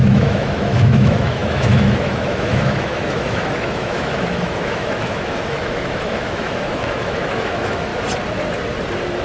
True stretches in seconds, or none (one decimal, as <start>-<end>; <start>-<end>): 7.9-9.2